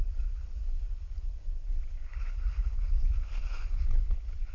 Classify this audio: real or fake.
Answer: fake